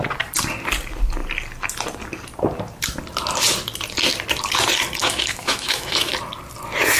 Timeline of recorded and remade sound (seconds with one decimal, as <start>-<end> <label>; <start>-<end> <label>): 0.0-5.0 recorded; 5.0-6.1 remade; 6.1-7.0 recorded